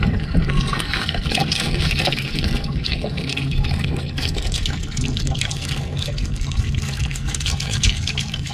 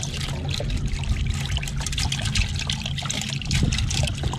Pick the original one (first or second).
second